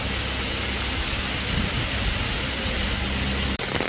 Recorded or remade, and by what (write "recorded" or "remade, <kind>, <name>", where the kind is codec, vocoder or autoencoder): recorded